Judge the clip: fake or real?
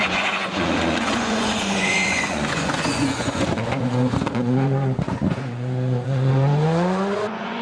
fake